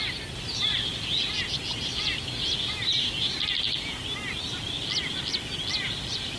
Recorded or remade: recorded